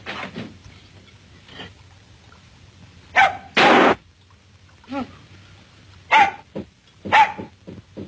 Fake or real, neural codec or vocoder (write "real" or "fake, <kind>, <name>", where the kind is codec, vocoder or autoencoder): real